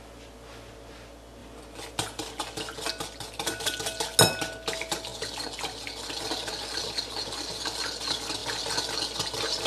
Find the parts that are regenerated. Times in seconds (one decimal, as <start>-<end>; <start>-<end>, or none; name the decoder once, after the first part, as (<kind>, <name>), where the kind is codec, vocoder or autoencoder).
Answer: none